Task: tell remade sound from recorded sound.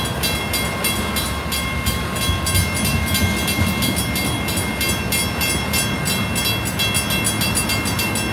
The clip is recorded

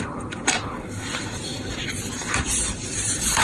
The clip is remade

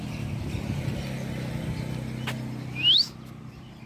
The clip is recorded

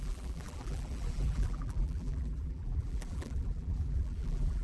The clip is remade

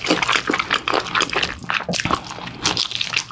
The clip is recorded